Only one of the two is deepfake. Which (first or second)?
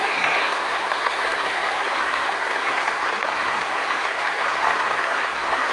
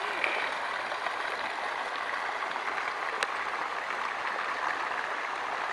first